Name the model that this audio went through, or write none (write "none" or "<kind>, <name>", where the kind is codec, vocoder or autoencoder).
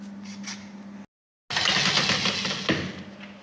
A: none